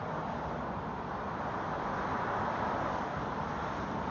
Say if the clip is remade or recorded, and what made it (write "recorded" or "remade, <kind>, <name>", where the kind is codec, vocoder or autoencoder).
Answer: recorded